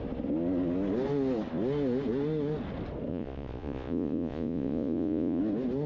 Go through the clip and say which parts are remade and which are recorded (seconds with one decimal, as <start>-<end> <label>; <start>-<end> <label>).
0.0-3.1 recorded; 3.1-5.4 remade; 5.4-5.9 recorded